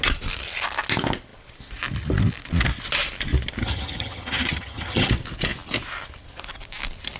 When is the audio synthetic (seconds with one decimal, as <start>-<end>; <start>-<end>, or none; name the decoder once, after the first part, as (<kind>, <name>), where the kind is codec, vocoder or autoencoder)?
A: 3.6-5.1 (vocoder, HiFi-GAN)